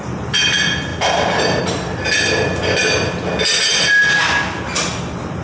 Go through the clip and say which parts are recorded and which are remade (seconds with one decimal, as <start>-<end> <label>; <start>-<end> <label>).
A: 0.0-5.4 recorded